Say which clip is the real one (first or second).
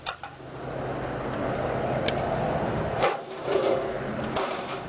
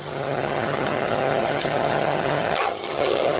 first